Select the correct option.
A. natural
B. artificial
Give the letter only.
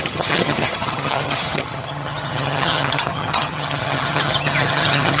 B